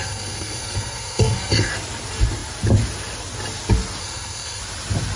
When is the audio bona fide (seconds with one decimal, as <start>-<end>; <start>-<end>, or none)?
1.7-4.0; 4.6-5.2